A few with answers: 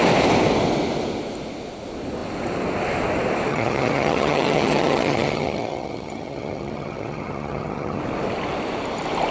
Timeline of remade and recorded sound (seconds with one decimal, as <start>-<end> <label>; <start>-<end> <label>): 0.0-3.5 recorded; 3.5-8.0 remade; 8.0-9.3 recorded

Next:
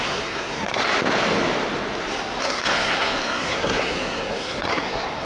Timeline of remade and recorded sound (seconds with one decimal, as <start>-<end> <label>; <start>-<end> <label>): 0.0-0.8 remade; 0.8-2.4 recorded; 2.4-5.2 remade

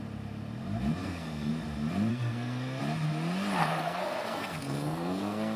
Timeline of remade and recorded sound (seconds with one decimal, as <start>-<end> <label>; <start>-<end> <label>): 0.0-1.0 recorded; 1.0-1.5 remade; 1.5-2.1 recorded; 2.1-2.8 remade; 2.8-3.6 recorded; 3.6-5.6 remade

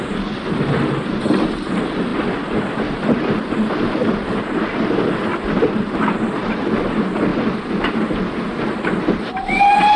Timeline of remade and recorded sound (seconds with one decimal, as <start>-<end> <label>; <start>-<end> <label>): 0.0-10.0 recorded

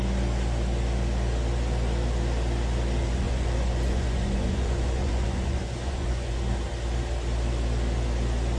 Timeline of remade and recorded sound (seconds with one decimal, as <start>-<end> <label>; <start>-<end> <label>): 0.0-3.0 recorded; 3.0-6.4 remade; 6.4-8.6 recorded

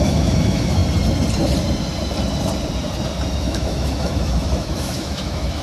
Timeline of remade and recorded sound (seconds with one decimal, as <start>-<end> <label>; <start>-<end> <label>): 0.0-0.8 remade; 0.8-3.4 recorded; 3.4-5.6 remade

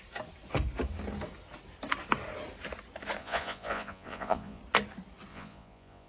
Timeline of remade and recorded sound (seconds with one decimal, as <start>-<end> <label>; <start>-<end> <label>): 0.0-3.2 recorded; 3.2-4.6 remade; 4.6-5.3 recorded; 5.3-6.1 remade

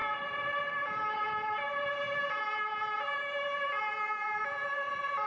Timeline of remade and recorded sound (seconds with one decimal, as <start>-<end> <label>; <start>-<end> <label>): 0.0-5.3 recorded